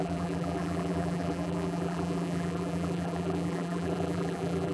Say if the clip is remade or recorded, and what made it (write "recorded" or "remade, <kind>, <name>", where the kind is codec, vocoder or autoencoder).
remade, vocoder, BigVGAN v2